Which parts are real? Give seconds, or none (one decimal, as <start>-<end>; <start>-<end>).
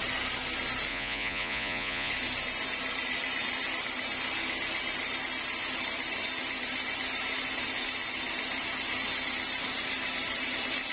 0.0-0.9; 2.1-10.9